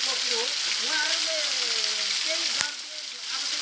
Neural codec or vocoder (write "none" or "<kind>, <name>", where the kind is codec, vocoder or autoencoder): none